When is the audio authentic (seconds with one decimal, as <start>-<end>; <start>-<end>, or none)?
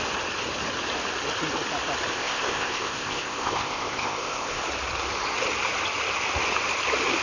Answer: 0.0-2.1; 4.6-7.2